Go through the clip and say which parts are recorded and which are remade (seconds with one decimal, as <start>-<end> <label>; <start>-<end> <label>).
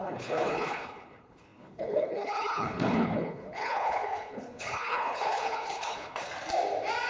0.0-6.3 remade; 6.3-7.1 recorded